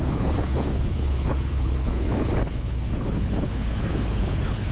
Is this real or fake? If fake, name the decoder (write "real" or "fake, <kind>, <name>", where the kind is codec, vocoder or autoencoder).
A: fake, codec, HILCodec